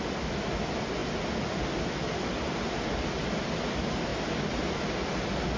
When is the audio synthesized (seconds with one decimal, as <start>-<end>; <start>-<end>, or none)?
none